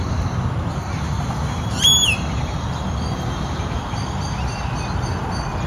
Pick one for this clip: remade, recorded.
recorded